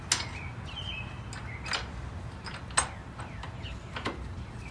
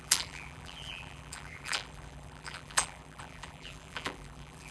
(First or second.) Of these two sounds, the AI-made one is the second